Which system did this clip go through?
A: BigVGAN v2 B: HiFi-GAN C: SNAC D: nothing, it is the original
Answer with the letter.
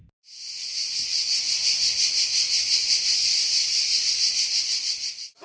D